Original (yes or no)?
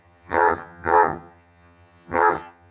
no